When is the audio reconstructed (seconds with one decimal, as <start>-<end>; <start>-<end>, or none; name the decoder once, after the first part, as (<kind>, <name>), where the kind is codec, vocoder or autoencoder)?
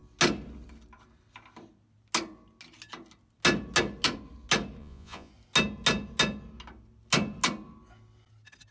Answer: 4.8-5.3 (vocoder, Vocos)